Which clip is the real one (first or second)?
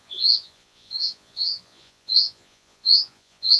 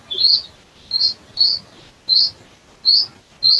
second